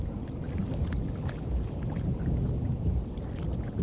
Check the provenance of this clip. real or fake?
real